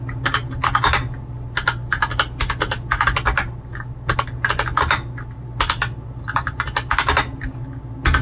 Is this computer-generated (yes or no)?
no